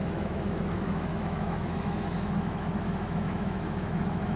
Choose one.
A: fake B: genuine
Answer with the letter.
A